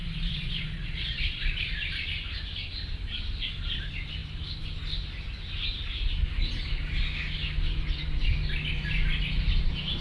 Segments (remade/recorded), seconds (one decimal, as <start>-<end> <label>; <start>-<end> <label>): 0.0-1.9 remade; 1.9-10.0 recorded